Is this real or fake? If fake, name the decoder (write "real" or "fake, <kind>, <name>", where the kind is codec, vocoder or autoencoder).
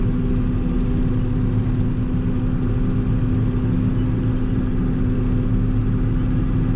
real